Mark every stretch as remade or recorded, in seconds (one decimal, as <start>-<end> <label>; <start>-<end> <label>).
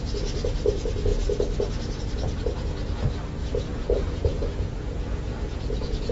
0.0-3.4 recorded; 3.4-6.1 remade